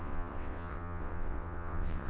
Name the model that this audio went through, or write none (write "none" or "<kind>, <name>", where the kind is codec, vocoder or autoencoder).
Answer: vocoder, WaveNeXt